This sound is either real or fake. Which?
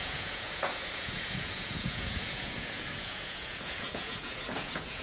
fake